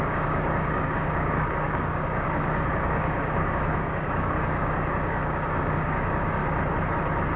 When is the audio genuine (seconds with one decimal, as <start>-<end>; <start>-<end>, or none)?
6.4-7.4